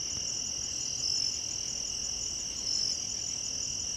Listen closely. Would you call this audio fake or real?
real